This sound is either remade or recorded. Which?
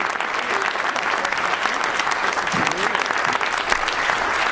recorded